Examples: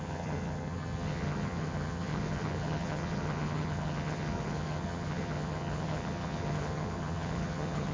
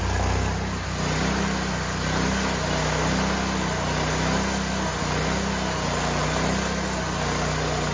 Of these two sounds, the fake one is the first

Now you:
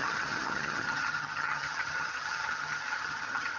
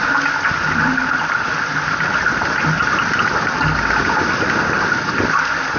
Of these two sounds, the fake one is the first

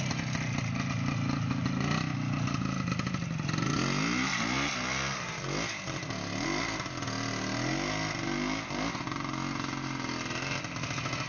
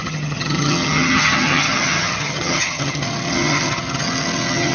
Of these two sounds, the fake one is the second